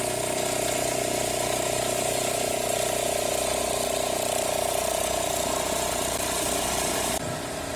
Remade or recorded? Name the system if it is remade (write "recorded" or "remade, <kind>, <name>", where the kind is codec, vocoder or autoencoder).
recorded